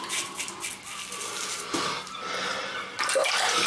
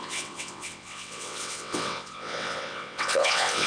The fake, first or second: second